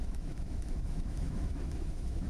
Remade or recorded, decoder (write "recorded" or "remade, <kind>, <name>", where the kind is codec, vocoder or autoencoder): remade, autoencoder, DAC-VAE